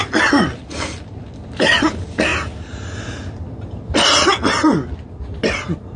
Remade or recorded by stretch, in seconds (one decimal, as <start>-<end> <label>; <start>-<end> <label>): 0.0-2.3 remade; 2.3-6.0 recorded